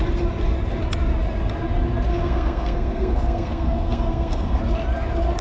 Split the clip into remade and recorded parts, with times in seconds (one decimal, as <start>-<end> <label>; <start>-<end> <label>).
0.0-2.1 recorded; 2.1-4.6 remade; 4.6-5.4 recorded